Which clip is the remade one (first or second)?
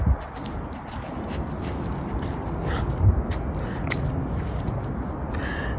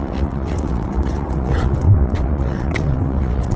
second